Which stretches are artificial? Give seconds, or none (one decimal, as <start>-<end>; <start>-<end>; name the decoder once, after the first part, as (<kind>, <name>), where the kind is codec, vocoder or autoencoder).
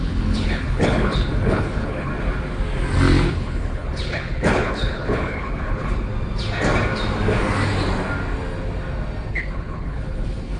0.0-2.1 (codec, HILCodec); 3.3-6.1; 9.3-10.6